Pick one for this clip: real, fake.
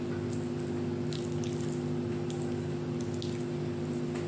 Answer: real